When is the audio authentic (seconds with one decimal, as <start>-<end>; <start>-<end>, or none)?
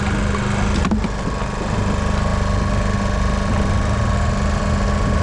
0.0-5.2